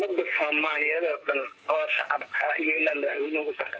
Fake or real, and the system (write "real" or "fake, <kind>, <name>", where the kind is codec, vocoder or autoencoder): fake, codec, SNAC